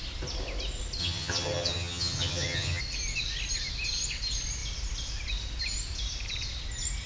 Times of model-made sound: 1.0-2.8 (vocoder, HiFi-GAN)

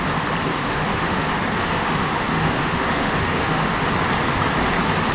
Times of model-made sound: 0.5-1.2 (autoencoder, DAC-VAE); 1.6-3.8

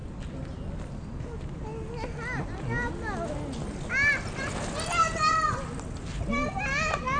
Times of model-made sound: none

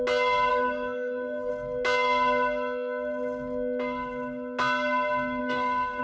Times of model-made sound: 0.5-1.5 (codec, SNAC); 5.4-6.0

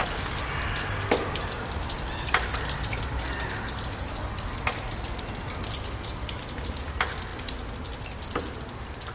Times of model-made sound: none

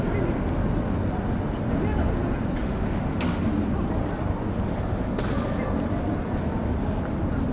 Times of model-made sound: 2.6-3.4 (autoencoder, DAC-VAE); 4.7-5.2